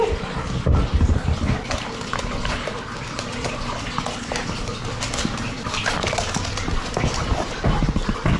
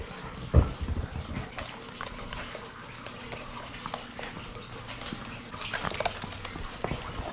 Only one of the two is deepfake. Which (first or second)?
first